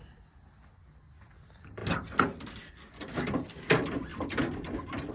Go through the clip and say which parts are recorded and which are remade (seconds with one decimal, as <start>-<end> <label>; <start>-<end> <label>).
0.0-4.1 recorded; 4.1-5.1 remade

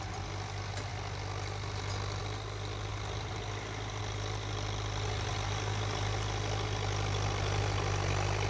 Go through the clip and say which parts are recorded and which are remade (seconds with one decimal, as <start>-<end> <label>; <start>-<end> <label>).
0.0-8.5 recorded

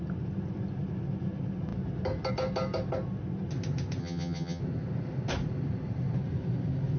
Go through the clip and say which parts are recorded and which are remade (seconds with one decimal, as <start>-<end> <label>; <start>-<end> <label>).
0.0-4.0 recorded; 4.0-4.6 remade; 4.6-7.0 recorded

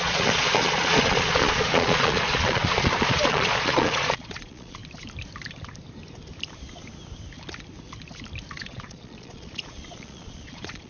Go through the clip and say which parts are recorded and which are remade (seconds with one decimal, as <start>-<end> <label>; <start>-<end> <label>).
0.0-4.8 remade; 4.8-8.5 recorded; 8.5-10.9 remade

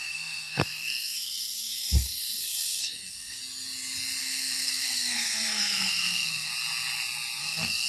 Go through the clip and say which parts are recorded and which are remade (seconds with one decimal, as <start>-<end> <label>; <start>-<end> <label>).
0.0-3.4 remade; 3.4-4.2 recorded; 4.2-6.5 remade; 6.5-7.4 recorded; 7.4-7.9 remade

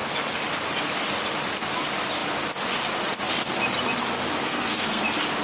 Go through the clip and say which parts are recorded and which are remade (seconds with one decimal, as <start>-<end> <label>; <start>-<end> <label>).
0.0-4.4 recorded; 4.4-5.0 remade; 5.0-5.4 recorded

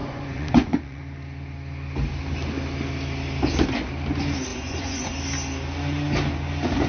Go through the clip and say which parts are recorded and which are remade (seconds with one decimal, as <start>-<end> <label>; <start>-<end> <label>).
0.0-1.0 remade; 1.0-4.5 recorded; 4.5-5.1 remade; 5.1-6.9 recorded

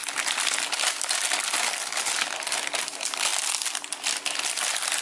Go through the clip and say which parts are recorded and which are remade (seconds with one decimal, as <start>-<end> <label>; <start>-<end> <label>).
0.0-5.0 recorded